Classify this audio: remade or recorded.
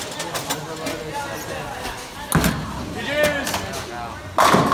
recorded